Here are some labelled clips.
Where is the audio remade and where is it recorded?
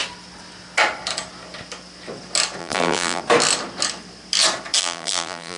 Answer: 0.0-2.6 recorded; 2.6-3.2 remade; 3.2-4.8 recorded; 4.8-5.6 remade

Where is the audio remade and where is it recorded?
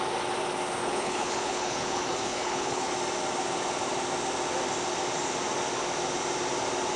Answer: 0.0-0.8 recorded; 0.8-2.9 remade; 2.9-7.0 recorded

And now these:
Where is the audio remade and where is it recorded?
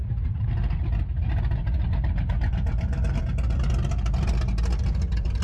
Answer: 0.0-3.2 remade; 3.2-5.4 recorded